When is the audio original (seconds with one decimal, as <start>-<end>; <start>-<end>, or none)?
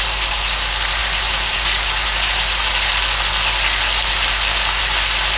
0.0-1.0; 2.9-5.4